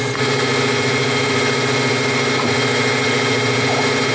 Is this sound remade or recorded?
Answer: remade